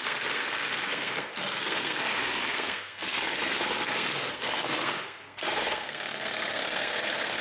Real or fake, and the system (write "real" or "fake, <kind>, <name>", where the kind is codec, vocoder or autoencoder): fake, codec, SNAC